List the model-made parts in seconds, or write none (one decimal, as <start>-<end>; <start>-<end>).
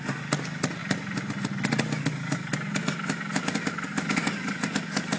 none